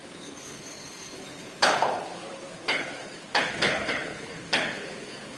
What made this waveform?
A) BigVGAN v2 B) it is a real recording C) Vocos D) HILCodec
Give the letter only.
D